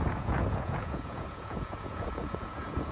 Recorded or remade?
remade